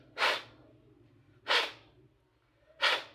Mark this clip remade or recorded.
recorded